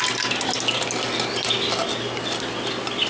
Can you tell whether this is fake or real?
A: real